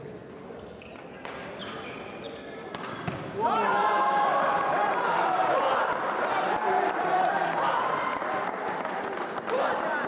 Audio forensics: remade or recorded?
remade